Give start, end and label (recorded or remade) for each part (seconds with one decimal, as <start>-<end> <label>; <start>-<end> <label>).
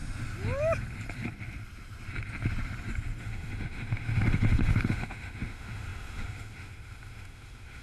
0.0-3.2 recorded; 3.2-7.8 remade